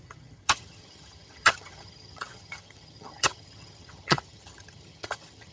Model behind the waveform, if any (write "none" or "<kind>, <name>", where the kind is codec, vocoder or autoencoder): vocoder, HiFi-GAN